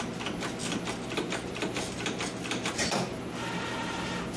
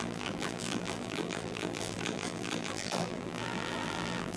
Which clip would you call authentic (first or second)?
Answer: first